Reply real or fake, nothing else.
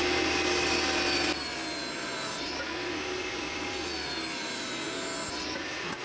real